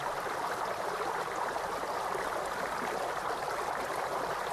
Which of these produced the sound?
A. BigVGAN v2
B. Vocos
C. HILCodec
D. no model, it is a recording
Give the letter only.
D